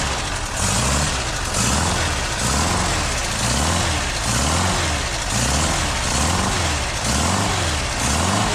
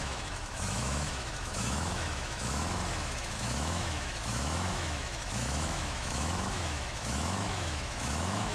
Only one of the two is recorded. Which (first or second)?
first